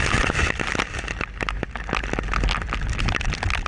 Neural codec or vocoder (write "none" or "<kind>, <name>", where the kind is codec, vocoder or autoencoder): none